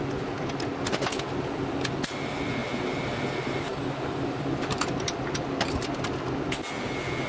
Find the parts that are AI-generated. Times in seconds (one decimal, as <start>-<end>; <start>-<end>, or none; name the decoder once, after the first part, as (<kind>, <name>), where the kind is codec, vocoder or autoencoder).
none